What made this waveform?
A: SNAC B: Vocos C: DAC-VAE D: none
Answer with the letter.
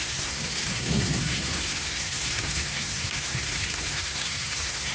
A